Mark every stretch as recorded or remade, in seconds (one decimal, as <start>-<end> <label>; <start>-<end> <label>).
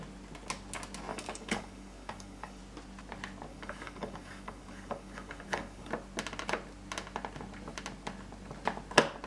0.0-1.1 recorded; 1.1-2.6 remade; 2.6-3.5 recorded; 3.5-5.9 remade; 5.9-9.3 recorded